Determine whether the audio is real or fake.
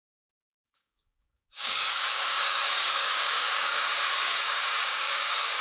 fake